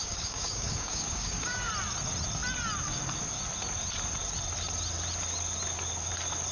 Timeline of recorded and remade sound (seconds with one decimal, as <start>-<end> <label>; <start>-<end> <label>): 0.0-1.7 remade; 1.7-6.5 recorded